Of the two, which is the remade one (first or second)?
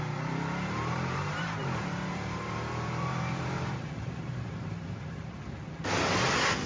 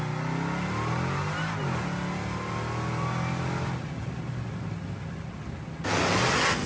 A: first